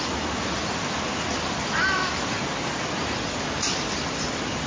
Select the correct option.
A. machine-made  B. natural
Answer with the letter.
B